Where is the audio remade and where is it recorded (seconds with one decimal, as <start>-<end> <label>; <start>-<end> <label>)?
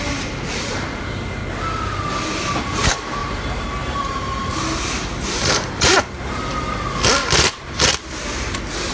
0.0-1.4 remade; 1.4-2.6 recorded; 2.6-4.5 remade; 4.5-5.2 recorded; 5.2-6.0 remade; 6.0-8.9 recorded